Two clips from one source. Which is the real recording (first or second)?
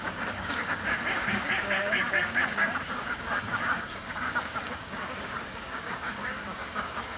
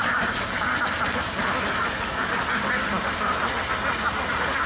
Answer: second